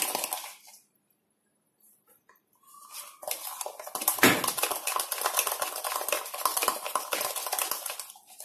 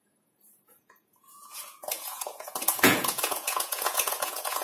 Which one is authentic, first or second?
first